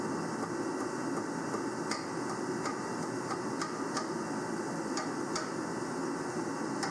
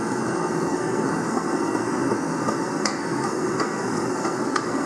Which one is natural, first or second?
first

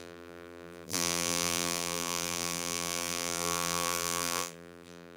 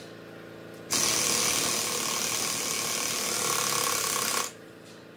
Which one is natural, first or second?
second